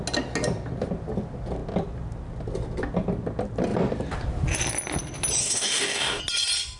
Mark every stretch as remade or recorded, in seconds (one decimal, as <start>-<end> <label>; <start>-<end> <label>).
0.0-5.4 recorded; 5.4-6.2 remade; 6.2-6.8 recorded